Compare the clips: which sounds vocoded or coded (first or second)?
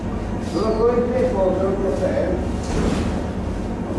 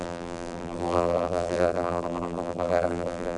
second